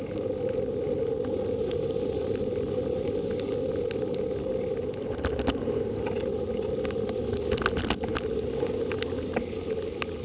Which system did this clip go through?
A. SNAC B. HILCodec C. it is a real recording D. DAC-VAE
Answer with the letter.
C